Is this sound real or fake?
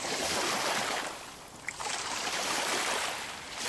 real